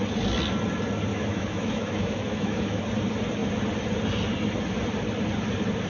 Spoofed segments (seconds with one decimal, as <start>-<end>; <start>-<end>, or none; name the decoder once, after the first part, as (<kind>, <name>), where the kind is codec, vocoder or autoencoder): 1.1-2.8 (autoencoder, DAC-VAE)